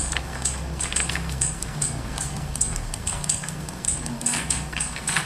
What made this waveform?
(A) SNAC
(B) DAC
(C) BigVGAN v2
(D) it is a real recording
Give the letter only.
A